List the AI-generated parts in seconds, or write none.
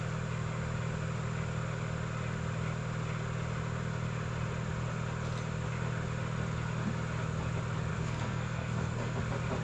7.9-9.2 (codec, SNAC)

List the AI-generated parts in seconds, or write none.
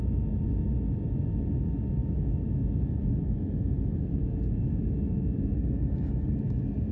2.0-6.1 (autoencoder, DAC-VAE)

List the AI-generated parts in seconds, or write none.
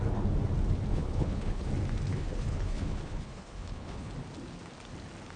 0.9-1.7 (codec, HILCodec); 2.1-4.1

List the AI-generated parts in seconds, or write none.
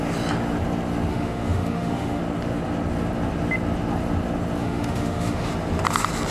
1.1-2.2 (autoencoder, DAC-VAE); 4.6-5.5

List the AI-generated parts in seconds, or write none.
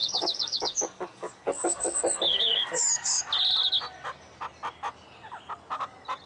0.0-3.2 (codec, DAC)